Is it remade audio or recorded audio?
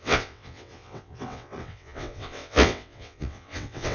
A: remade